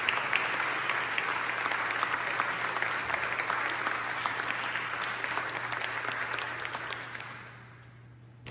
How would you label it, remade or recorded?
recorded